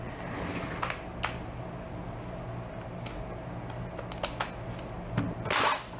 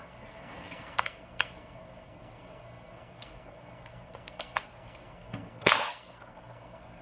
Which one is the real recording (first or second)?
first